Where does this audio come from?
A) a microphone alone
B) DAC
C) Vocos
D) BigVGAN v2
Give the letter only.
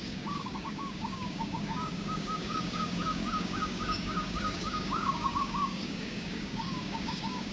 B